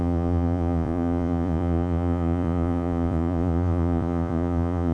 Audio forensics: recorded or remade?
remade